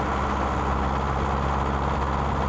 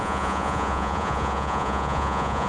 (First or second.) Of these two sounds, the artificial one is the second